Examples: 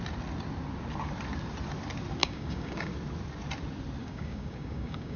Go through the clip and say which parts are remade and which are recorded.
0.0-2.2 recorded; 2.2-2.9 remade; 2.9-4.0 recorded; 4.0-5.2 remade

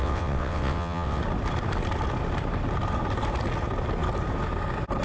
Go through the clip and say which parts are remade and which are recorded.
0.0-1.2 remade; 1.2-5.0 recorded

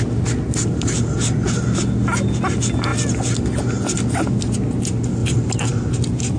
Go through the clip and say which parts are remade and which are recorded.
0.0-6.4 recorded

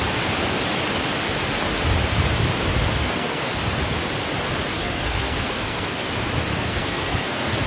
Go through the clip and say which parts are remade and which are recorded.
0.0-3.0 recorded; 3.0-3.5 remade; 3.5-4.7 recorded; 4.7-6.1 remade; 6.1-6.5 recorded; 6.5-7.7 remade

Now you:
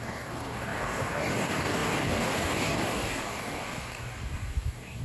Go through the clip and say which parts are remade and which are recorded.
0.0-5.0 remade